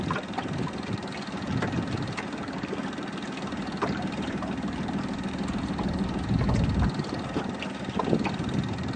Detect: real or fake real